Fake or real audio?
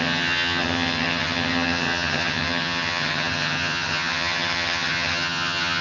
fake